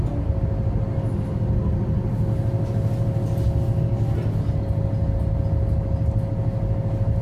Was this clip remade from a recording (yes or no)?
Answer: no